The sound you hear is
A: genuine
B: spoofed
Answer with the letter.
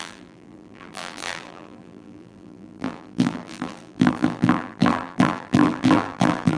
B